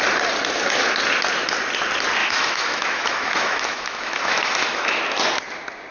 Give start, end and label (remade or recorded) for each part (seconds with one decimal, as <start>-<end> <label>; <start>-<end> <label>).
0.0-2.2 recorded; 2.2-5.0 remade; 5.0-5.9 recorded

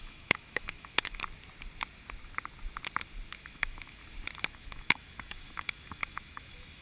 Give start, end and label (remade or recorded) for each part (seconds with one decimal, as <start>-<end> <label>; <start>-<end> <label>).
0.0-1.2 remade; 1.2-3.4 recorded; 3.4-4.0 remade; 4.0-4.5 recorded; 4.5-6.8 remade

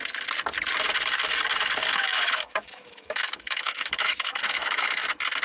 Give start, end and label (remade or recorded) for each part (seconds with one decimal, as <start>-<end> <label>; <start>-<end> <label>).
0.0-1.8 recorded; 1.8-5.0 remade; 5.0-5.4 recorded

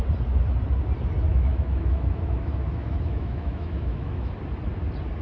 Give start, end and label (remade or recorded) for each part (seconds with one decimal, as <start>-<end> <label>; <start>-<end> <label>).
0.0-1.3 recorded; 1.3-4.3 remade; 4.3-5.2 recorded